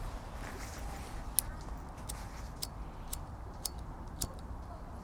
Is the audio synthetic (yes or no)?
no